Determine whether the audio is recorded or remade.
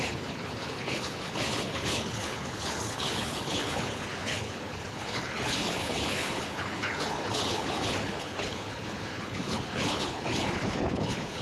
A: remade